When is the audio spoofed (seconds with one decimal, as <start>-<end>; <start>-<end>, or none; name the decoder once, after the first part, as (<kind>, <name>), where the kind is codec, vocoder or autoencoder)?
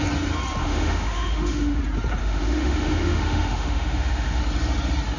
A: 0.6-1.8 (autoencoder, DAC-VAE); 2.2-4.4